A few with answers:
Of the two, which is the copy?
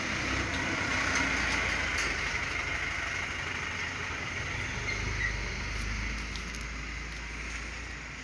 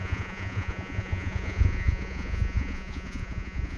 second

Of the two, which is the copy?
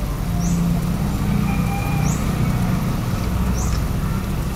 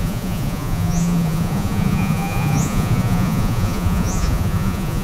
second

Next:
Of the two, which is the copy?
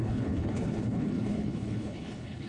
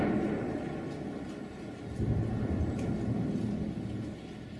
first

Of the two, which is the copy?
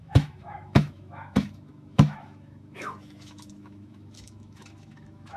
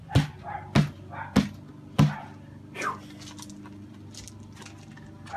first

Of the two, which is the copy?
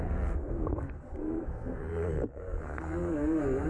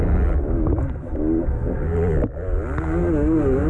first